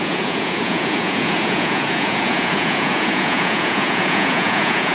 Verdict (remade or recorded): remade